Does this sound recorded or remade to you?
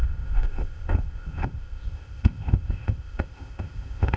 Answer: remade